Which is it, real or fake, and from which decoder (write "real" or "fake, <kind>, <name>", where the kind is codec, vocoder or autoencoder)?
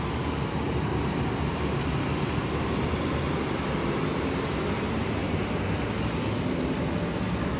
real